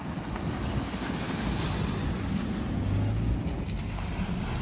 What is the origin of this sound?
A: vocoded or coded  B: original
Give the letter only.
B